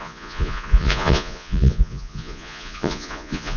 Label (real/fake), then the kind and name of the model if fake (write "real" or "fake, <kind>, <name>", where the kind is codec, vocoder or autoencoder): fake, vocoder, Vocos